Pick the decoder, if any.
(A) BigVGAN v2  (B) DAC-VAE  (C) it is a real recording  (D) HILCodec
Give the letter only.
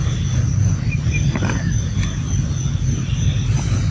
C